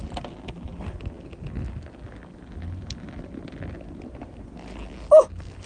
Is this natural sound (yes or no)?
yes